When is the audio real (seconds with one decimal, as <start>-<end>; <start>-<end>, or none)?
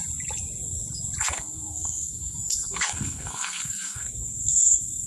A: 0.0-1.2